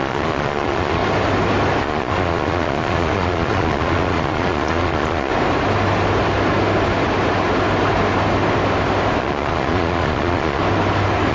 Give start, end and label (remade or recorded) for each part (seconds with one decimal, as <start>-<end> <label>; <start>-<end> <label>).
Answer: 0.0-1.0 remade; 1.0-1.8 recorded; 1.8-5.3 remade; 5.3-9.2 recorded; 9.2-10.6 remade; 10.6-11.3 recorded